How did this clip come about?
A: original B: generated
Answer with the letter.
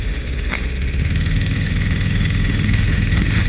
B